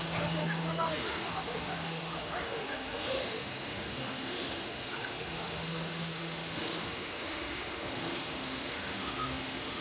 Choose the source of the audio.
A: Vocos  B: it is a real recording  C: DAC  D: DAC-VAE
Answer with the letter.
D